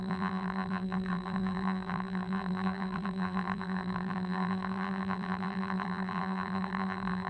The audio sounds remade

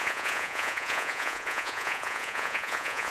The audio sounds remade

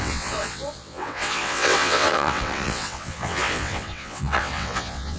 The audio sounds remade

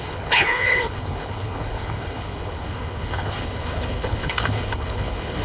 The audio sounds remade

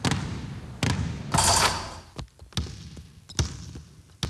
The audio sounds recorded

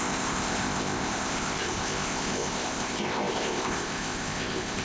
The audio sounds remade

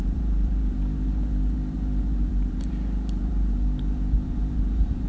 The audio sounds remade